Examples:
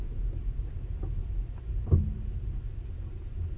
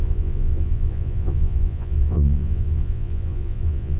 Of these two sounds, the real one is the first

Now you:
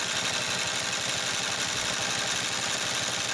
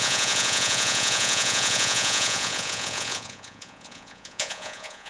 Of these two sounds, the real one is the first